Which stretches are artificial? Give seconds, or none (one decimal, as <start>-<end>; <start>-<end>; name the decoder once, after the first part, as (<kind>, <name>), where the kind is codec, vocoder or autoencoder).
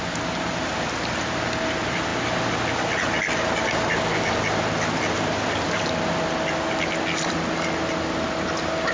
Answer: none